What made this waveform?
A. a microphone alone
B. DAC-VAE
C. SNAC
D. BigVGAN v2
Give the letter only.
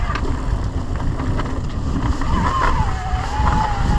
A